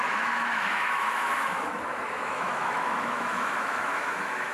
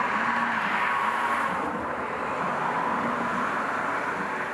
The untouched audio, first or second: second